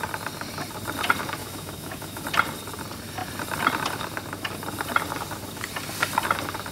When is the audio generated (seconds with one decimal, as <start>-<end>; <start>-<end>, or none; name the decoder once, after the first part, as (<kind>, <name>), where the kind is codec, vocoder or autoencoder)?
1.4-2.2 (autoencoder, DAC-VAE)